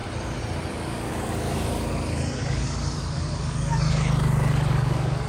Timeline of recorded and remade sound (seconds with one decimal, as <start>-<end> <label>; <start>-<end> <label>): 0.0-0.7 recorded; 0.7-5.3 remade